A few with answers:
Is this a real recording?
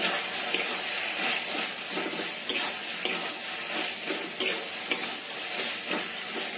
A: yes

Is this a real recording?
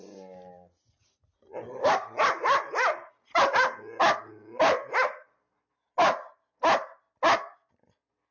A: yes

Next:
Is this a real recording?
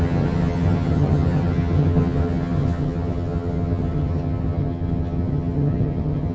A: no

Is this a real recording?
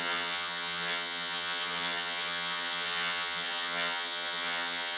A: no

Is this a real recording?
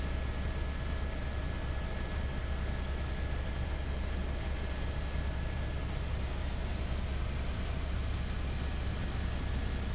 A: yes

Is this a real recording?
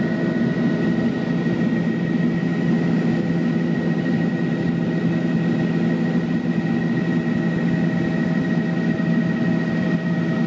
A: yes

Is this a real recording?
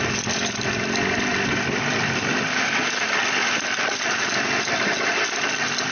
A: yes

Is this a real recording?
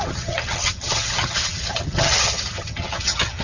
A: no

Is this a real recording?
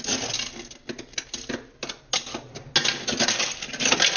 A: yes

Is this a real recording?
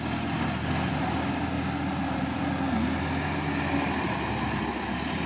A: yes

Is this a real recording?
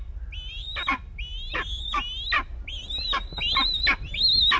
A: yes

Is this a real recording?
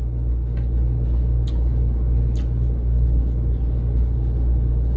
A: yes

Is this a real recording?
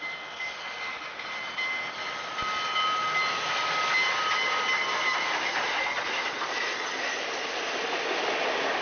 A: yes